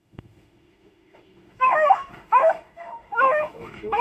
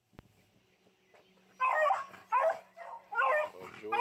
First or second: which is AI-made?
first